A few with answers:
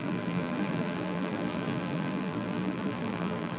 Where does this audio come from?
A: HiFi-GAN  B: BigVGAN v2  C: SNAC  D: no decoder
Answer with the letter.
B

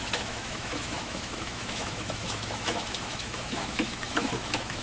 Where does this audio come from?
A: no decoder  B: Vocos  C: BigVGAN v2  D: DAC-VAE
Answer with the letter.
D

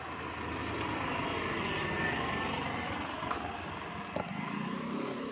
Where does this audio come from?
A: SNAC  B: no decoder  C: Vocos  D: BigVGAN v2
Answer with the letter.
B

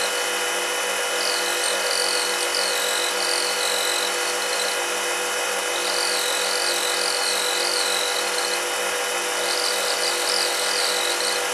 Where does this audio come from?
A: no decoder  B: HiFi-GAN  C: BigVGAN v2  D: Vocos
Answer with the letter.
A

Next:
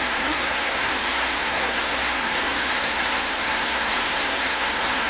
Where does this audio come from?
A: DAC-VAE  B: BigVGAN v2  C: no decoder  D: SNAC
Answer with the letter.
D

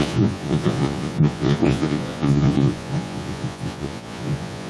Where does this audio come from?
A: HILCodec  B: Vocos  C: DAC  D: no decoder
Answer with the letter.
B